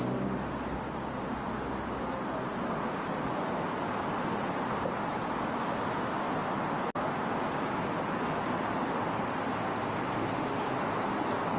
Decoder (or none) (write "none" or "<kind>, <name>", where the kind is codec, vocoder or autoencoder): none